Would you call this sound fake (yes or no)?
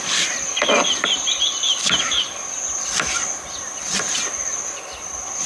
no